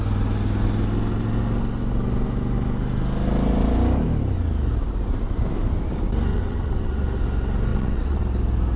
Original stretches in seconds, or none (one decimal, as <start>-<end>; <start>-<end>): 0.0-6.3; 7.0-7.7; 8.2-8.8